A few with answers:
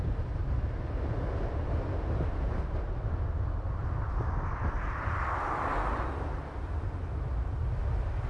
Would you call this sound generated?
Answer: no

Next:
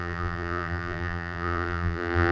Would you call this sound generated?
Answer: yes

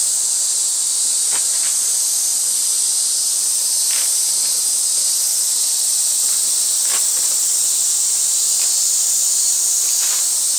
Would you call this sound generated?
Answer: yes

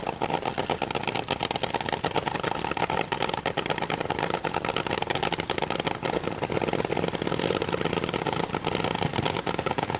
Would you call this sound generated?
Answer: no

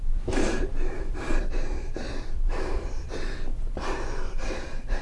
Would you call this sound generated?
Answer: yes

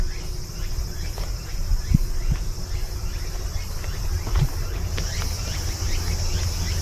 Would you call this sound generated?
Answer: no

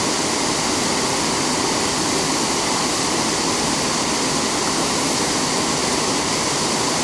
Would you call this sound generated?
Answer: no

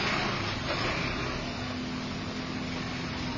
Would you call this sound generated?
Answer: no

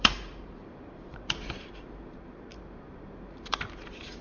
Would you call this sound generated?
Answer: yes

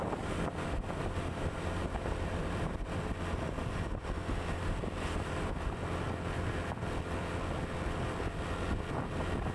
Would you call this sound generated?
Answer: no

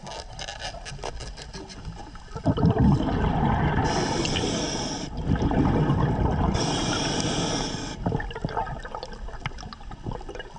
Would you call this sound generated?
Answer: no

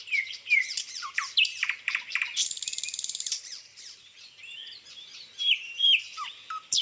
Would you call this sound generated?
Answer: yes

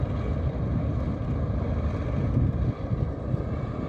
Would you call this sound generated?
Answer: no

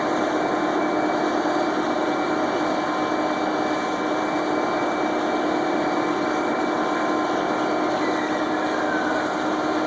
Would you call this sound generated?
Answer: no